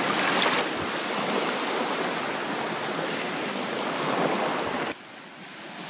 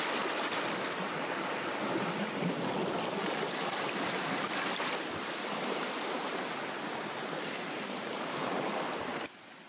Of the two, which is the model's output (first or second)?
second